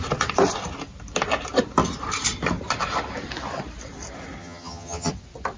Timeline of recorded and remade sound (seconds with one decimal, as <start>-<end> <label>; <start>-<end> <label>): 0.0-4.4 recorded; 4.4-5.1 remade; 5.1-5.6 recorded